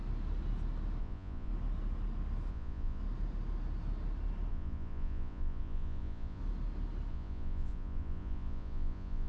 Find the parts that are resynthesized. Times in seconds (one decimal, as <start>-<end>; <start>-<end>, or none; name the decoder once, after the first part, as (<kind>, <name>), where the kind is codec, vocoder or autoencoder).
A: 1.0-1.5 (vocoder, Vocos); 2.5-3.0; 4.5-6.4; 7.1-9.3